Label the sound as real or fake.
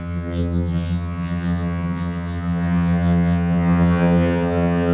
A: fake